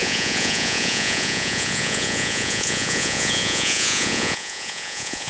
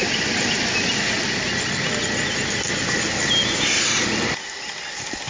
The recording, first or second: second